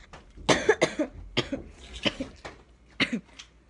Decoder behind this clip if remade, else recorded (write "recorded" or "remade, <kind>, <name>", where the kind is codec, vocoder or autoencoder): recorded